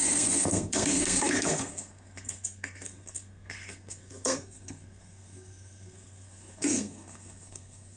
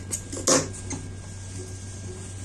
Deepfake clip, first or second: first